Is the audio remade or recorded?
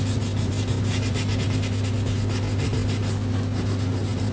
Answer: recorded